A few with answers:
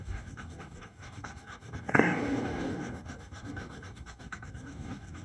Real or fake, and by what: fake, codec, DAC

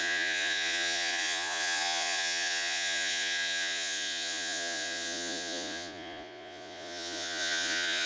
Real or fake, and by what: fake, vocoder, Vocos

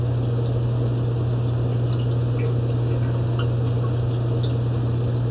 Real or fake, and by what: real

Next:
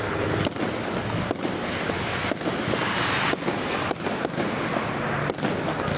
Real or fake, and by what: real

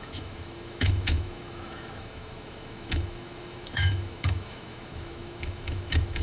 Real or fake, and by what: fake, autoencoder, DAC-VAE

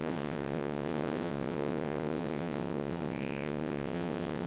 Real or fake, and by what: fake, vocoder, WaveNeXt